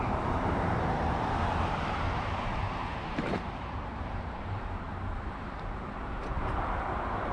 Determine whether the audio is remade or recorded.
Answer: remade